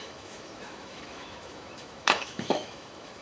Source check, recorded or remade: remade